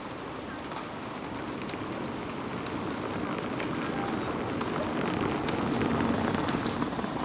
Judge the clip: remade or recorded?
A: recorded